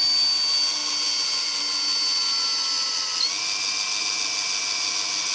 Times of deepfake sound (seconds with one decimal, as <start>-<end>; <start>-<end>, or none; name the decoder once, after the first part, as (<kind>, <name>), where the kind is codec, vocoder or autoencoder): none